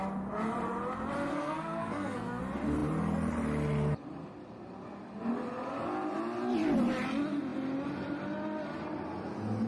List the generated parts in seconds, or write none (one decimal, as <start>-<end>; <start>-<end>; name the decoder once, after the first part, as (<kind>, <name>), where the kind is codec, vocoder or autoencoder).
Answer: 1.3-2.4 (codec, SNAC)